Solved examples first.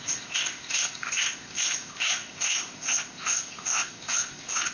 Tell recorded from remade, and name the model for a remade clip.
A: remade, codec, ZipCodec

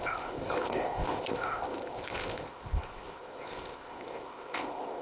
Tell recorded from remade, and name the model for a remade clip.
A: remade, codec, ZipCodec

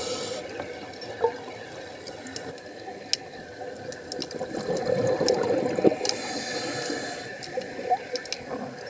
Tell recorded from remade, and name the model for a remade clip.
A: recorded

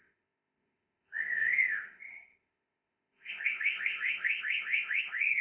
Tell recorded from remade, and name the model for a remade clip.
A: remade, codec, ZipCodec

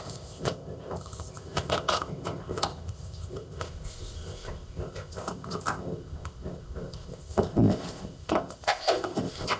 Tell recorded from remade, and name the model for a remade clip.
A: remade, codec, ZipCodec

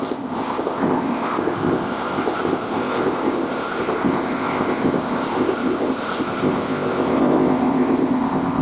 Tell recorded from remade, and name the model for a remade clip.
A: remade, codec, ZipCodec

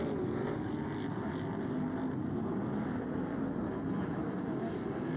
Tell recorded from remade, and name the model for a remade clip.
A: recorded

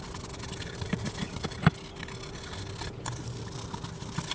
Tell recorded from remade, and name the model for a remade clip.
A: recorded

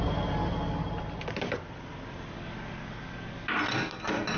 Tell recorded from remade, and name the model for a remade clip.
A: recorded